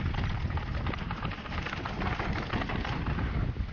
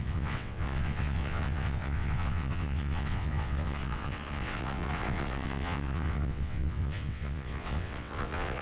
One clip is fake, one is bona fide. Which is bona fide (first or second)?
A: first